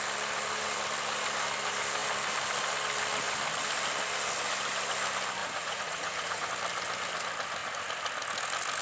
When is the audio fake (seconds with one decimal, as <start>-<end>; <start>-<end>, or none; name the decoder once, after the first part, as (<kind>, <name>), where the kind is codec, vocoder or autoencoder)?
5.4-6.5 (vocoder, Vocos)